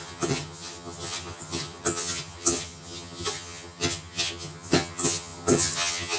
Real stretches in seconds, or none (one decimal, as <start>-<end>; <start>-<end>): none